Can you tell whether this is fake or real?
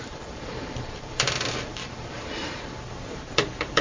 fake